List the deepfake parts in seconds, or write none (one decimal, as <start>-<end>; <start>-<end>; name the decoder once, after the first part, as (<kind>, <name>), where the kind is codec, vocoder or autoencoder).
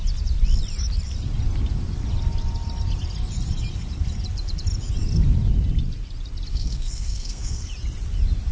6.5-7.7 (codec, SNAC)